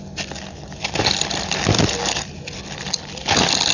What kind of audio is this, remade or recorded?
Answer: recorded